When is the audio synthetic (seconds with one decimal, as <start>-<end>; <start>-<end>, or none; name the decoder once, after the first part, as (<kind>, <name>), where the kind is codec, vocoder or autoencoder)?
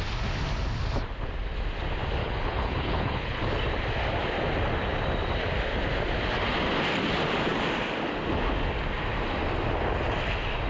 2.2-3.4 (codec, HILCodec)